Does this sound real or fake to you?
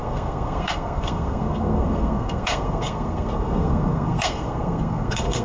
fake